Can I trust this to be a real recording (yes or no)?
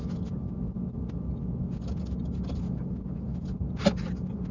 yes